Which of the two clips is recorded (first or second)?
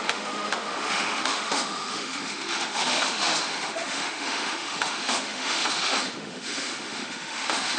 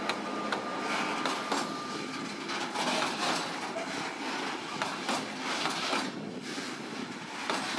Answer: second